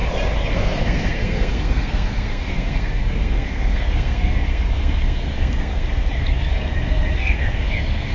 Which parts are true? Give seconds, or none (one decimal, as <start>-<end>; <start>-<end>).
0.0-0.5